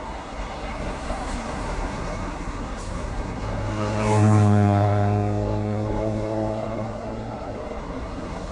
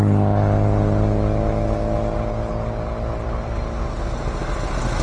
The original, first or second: second